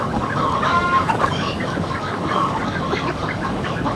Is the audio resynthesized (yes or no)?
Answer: yes